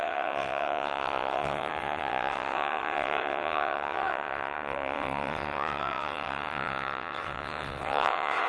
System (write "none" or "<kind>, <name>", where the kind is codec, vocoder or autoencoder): vocoder, WaveNeXt